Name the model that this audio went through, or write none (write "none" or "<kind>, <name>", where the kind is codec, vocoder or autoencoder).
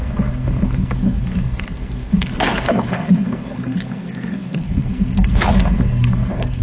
codec, SNAC